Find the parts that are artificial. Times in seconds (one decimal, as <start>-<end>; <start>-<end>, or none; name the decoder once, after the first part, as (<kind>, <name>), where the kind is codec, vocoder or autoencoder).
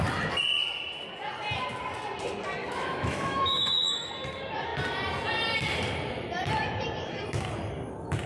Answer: 2.6-4.1 (autoencoder, DAC-VAE)